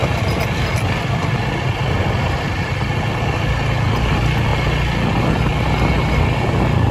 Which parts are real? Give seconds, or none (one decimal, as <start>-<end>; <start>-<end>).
4.1-6.9